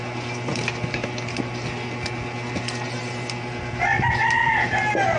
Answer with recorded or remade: recorded